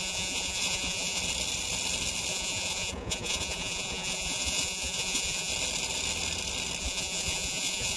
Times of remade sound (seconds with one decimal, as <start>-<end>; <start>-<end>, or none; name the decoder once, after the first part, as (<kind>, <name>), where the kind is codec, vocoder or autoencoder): 0.0-1.2 (vocoder, Vocos); 2.3-5.5; 6.8-8.0